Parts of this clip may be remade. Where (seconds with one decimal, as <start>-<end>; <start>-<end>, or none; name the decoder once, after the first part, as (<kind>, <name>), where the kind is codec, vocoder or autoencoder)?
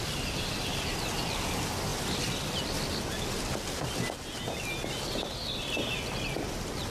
none